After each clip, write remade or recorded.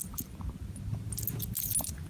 recorded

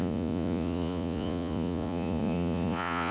remade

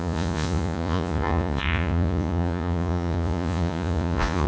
remade